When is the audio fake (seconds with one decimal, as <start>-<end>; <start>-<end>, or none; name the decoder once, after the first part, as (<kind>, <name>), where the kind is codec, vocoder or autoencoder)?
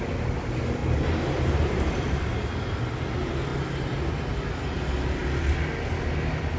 0.8-2.8 (vocoder, BigVGAN v2)